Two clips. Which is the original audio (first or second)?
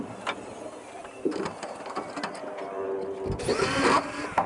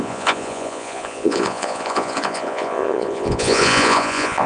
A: first